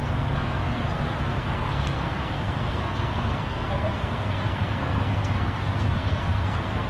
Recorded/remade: remade